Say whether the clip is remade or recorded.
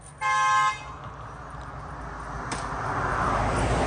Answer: recorded